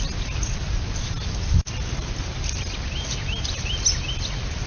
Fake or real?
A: real